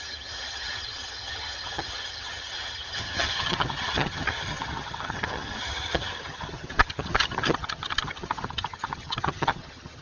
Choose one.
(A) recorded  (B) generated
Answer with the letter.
B